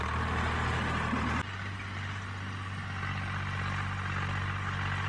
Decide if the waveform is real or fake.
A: real